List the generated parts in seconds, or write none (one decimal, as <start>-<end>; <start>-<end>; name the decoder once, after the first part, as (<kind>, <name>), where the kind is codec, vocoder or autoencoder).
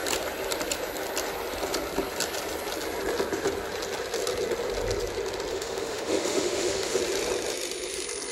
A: 5.5-7.0 (autoencoder, DAC-VAE)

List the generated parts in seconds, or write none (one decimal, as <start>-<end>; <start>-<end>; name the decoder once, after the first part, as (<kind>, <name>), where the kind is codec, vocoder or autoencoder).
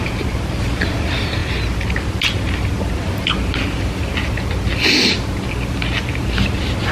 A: none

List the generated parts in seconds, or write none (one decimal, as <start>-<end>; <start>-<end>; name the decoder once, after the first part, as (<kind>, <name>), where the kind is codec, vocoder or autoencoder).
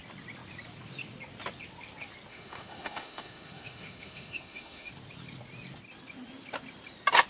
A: 2.3-4.9 (autoencoder, DAC-VAE)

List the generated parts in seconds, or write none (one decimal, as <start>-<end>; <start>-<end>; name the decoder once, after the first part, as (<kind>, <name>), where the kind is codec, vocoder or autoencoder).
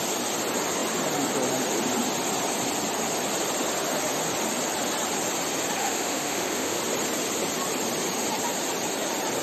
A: 5.8-6.8 (autoencoder, DAC-VAE)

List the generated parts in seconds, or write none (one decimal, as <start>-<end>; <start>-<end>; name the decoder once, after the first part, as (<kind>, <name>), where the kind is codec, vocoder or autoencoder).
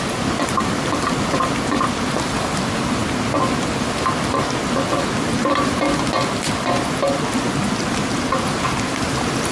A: none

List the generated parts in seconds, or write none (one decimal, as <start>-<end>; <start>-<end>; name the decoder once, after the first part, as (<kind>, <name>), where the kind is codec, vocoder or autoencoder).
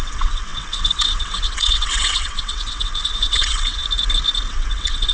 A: 0.0-3.8 (vocoder, WaveNeXt); 4.5-5.1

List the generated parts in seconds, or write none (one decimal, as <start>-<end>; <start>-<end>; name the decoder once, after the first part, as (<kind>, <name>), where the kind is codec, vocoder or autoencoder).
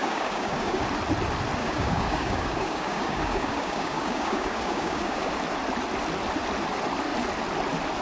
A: 0.0-0.8 (codec, DAC); 1.6-5.3